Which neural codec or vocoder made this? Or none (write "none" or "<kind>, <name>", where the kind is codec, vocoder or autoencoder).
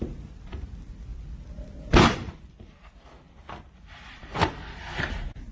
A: none